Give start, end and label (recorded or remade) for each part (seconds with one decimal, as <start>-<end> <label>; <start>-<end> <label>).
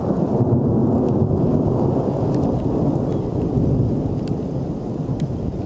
0.0-5.7 recorded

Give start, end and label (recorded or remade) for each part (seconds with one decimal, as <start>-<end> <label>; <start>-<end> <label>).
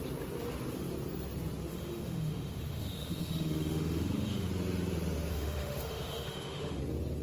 0.0-1.7 recorded; 1.7-4.5 remade; 4.5-5.3 recorded; 5.3-6.8 remade; 6.8-7.2 recorded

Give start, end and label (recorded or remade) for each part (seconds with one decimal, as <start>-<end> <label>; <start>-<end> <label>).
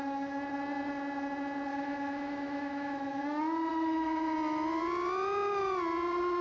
0.0-1.7 recorded; 1.7-3.2 remade; 3.2-3.7 recorded; 3.7-4.8 remade; 4.8-6.4 recorded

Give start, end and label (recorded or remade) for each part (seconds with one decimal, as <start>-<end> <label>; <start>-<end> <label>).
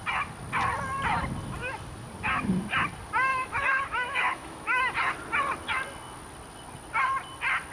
0.0-3.3 recorded; 3.3-4.8 remade; 4.8-7.7 recorded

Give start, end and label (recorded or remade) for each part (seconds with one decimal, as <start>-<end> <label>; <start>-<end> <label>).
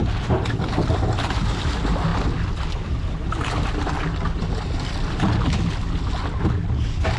0.0-7.2 recorded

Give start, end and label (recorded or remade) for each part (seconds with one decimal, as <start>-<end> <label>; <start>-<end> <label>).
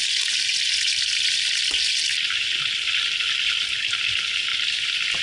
0.0-5.2 recorded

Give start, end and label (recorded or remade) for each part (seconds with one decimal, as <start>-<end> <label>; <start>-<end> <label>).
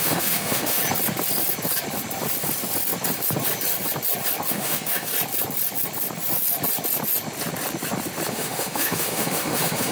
0.0-0.8 remade; 0.8-4.5 recorded; 4.5-5.1 remade; 5.1-8.3 recorded; 8.3-9.9 remade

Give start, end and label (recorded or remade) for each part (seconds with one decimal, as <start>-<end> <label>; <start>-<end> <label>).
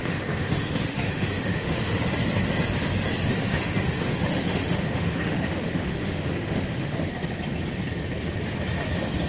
0.0-2.1 remade; 2.1-3.3 recorded; 3.3-7.1 remade; 7.1-9.3 recorded